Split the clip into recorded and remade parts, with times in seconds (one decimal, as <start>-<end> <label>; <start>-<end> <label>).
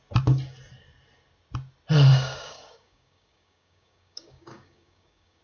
0.0-2.1 recorded; 2.1-5.4 remade